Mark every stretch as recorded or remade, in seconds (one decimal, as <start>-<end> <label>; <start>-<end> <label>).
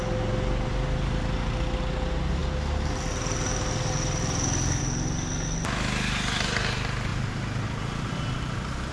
0.0-8.9 recorded